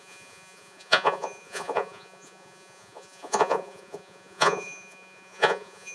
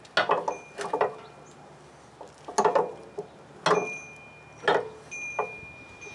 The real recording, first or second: second